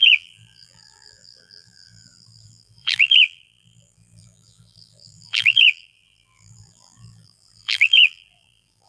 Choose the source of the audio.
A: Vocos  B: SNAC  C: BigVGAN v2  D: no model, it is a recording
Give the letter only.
C